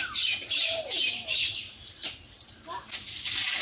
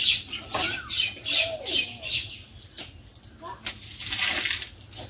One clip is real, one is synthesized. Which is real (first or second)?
second